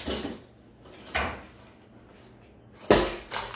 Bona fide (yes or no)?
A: yes